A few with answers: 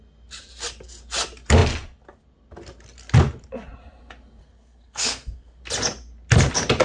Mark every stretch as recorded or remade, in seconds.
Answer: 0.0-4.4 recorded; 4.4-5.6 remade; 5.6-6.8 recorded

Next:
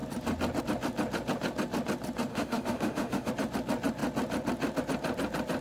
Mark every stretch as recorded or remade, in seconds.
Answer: 0.0-2.3 recorded; 2.3-3.3 remade; 3.3-5.6 recorded

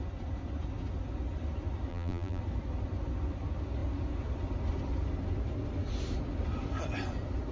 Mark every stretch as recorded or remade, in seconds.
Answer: 0.0-1.9 recorded; 1.9-2.4 remade; 2.4-7.5 recorded

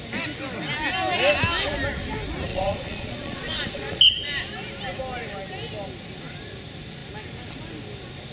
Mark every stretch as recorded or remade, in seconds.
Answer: 0.0-2.5 recorded; 2.5-4.0 remade; 4.0-8.3 recorded

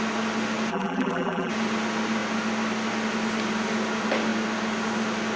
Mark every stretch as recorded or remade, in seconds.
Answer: 0.0-0.7 recorded; 0.7-1.5 remade; 1.5-5.4 recorded